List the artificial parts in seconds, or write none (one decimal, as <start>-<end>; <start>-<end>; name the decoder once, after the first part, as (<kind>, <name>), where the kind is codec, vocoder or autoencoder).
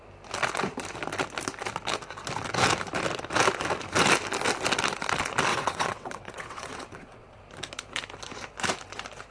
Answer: 5.5-7.4 (vocoder, WaveNeXt)